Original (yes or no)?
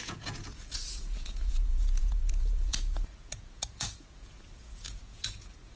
no